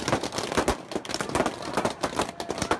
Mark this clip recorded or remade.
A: recorded